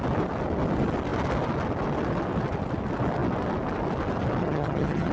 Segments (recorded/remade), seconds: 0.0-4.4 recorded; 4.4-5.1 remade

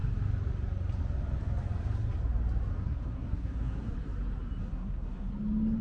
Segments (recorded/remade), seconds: 0.0-2.8 recorded; 2.8-3.9 remade; 3.9-4.6 recorded; 4.6-5.3 remade; 5.3-5.8 recorded

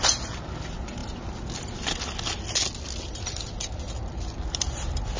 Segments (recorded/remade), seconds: 0.0-5.2 recorded

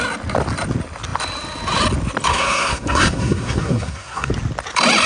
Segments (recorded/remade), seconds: 0.0-2.3 recorded; 2.3-4.3 remade; 4.3-5.1 recorded